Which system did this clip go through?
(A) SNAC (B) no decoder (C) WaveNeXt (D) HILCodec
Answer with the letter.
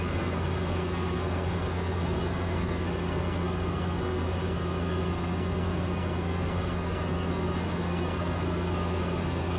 A